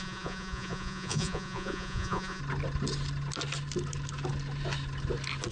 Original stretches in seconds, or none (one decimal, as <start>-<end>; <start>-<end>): 2.4-5.5